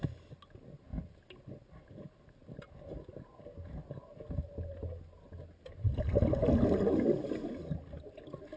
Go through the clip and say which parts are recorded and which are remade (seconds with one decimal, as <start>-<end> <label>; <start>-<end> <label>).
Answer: 0.0-8.6 recorded